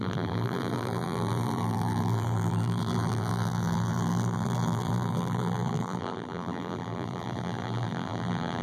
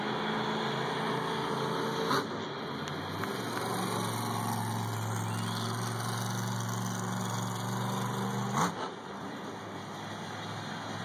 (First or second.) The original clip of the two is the second